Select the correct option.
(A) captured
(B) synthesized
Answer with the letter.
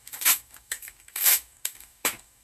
B